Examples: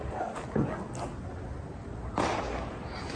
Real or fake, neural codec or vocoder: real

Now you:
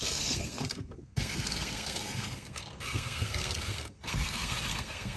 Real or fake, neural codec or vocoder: fake, codec, SNAC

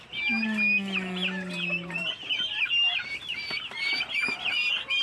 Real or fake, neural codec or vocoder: real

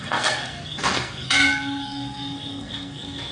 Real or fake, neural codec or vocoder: fake, codec, SNAC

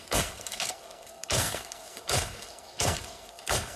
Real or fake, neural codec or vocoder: fake, codec, SNAC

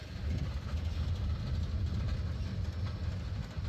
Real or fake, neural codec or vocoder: real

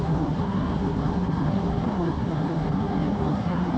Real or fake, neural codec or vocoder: fake, codec, SNAC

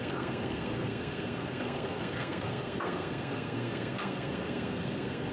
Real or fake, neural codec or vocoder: fake, codec, SNAC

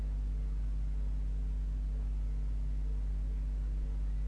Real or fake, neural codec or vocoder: real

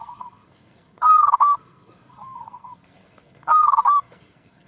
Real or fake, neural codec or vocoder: fake, codec, SNAC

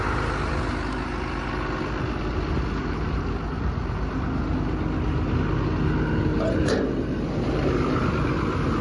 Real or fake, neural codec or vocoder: real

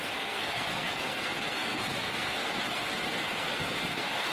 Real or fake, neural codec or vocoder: fake, codec, SNAC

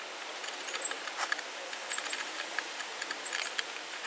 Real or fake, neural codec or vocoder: real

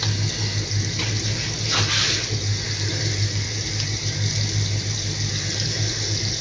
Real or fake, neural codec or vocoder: real